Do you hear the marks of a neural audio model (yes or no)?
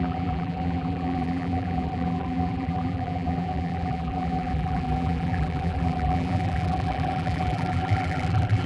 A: yes